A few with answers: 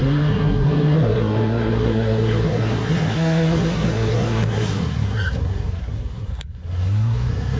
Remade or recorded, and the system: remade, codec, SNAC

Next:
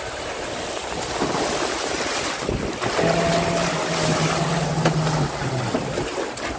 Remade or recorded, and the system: recorded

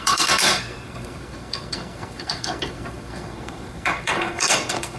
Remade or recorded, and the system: remade, codec, SNAC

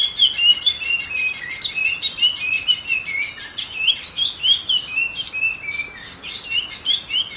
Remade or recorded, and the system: recorded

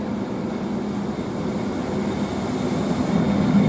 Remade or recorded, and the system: recorded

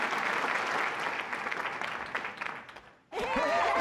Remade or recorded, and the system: recorded